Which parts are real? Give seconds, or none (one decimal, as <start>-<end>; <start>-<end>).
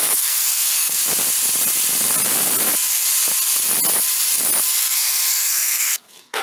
1.0-4.8